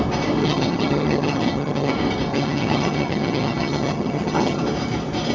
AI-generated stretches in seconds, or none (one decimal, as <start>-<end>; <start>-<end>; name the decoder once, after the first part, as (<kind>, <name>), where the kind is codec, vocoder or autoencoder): 0.4-1.9 (vocoder, HiFi-GAN); 2.3-4.6